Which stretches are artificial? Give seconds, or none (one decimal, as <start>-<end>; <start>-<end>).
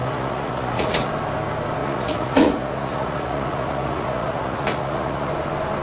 0.0-1.1; 1.8-5.3